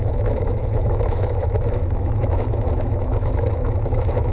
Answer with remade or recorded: remade